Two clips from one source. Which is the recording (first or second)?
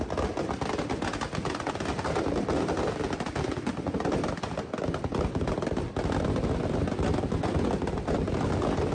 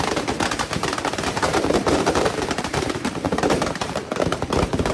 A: first